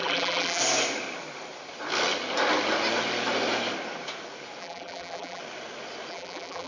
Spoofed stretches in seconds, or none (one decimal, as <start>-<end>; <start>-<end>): 0.0-0.6; 4.6-5.4; 6.1-6.7